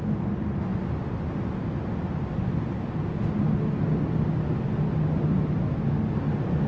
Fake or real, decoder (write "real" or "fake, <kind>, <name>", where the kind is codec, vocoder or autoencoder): real